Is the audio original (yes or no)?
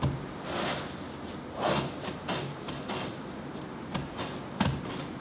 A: yes